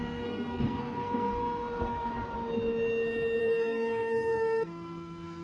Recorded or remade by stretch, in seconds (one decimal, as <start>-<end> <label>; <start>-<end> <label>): 0.0-2.1 remade; 2.1-3.4 recorded; 3.4-5.4 remade